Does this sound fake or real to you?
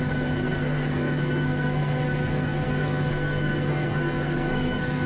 fake